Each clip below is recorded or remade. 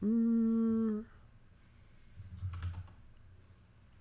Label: recorded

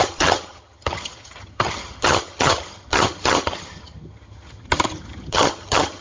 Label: remade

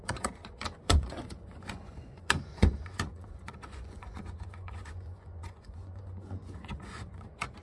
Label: remade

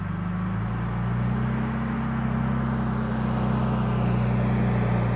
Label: recorded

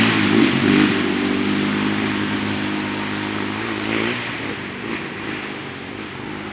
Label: recorded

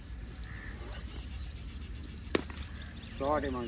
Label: recorded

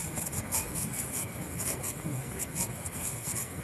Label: remade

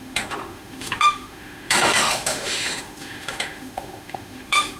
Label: remade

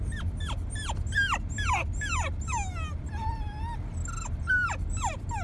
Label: recorded